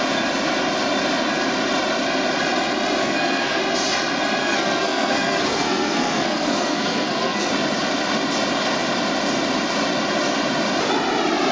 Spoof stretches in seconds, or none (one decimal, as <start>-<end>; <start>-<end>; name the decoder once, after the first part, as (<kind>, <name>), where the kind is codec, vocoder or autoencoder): 3.0-3.6 (codec, SNAC); 4.4-7.5